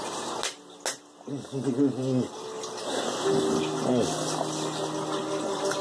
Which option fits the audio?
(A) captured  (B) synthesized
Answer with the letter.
A